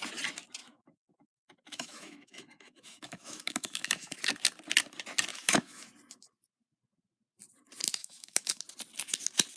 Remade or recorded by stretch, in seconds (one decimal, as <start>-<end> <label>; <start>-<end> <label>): 0.0-0.6 recorded; 0.6-4.2 remade; 4.2-5.3 recorded; 5.3-5.9 remade; 5.9-8.0 recorded; 8.0-8.6 remade; 8.6-9.6 recorded